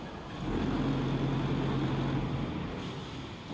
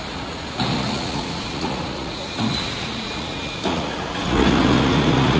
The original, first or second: first